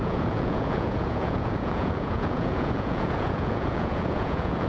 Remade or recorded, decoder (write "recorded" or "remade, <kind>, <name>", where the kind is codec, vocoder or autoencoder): remade, vocoder, Vocos